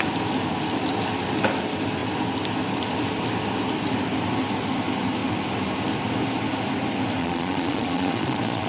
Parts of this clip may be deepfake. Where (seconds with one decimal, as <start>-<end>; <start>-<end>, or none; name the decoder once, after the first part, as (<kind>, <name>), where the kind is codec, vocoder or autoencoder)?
7.2-8.7 (vocoder, Vocos)